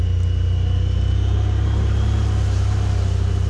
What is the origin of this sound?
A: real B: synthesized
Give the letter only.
A